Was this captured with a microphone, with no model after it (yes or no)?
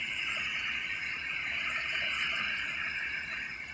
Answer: no